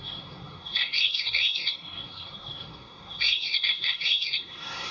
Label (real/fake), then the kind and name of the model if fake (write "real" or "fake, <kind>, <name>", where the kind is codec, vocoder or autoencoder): fake, codec, SNAC